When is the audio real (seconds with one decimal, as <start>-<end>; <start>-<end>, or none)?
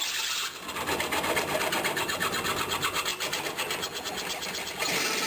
0.0-5.3